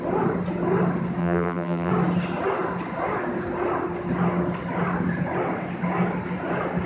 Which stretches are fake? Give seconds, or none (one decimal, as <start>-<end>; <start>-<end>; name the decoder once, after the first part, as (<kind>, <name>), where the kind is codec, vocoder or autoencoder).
1.2-1.9 (vocoder, BigVGAN v2)